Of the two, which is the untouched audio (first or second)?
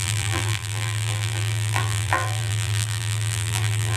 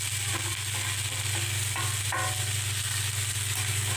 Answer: second